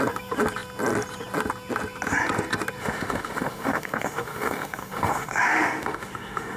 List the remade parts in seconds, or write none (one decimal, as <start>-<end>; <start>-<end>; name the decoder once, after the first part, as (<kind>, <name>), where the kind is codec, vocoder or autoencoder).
2.8-6.6 (autoencoder, DAC-VAE)